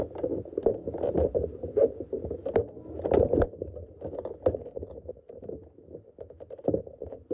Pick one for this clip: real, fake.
real